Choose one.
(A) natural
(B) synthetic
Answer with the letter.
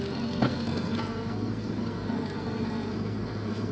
B